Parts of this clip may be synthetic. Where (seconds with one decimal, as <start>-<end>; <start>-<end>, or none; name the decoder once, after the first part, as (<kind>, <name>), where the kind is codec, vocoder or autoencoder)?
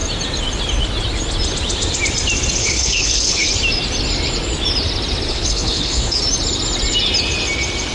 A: 2.6-3.5 (codec, HILCodec); 5.3-6.2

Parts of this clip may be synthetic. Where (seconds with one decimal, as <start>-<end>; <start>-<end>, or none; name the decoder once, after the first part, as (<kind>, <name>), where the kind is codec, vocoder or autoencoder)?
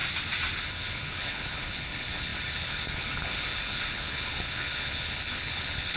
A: 0.6-6.0 (codec, HILCodec)